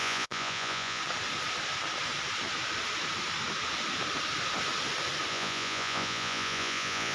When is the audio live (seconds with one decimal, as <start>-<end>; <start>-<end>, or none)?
1.0-5.3